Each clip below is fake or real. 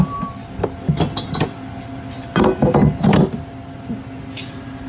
real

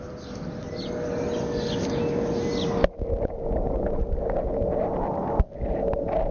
real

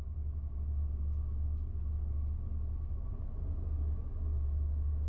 real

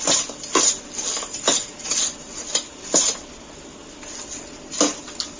real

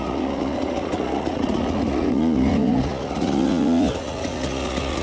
fake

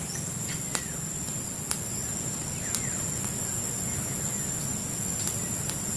real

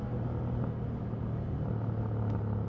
real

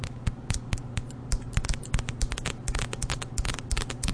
real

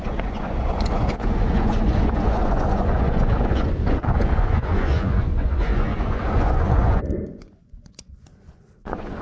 fake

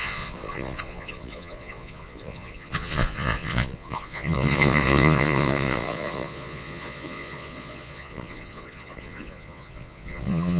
fake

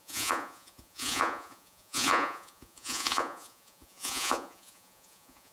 fake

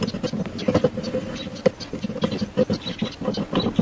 real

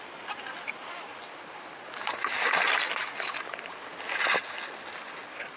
real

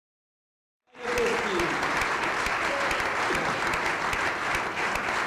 real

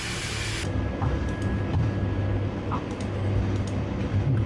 real